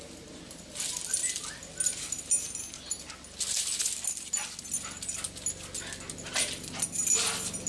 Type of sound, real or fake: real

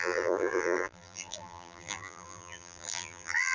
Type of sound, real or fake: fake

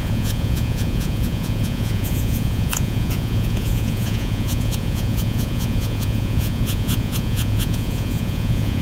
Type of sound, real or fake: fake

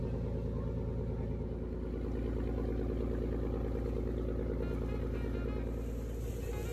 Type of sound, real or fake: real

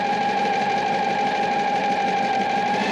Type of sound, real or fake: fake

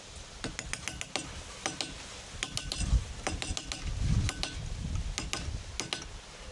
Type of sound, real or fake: real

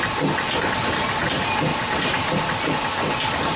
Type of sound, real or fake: real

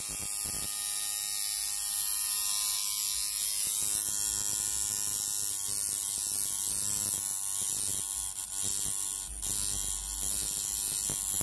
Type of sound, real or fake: real